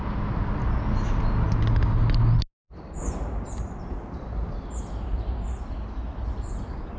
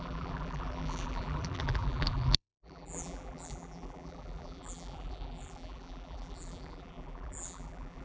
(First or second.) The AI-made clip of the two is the second